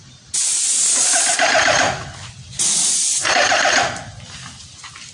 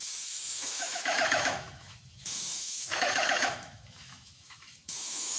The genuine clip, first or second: first